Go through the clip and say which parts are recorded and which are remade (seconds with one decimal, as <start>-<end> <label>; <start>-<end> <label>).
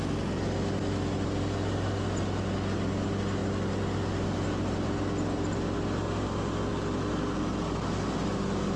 0.0-8.8 recorded